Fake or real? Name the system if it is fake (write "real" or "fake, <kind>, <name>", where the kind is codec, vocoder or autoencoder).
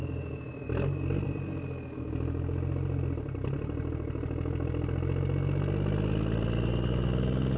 real